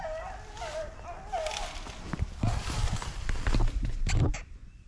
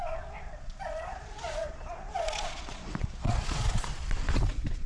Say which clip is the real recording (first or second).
first